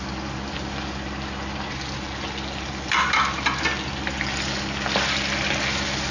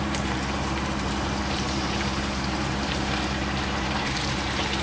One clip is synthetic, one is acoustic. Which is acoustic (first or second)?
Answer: first